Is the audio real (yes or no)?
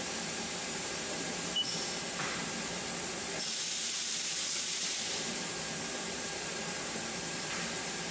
no